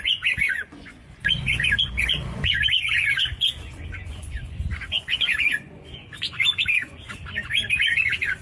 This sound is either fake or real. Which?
fake